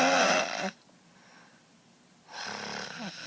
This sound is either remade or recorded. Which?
recorded